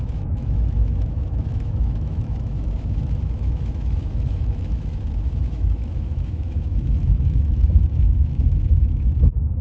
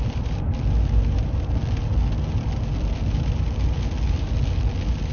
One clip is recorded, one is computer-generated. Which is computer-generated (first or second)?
first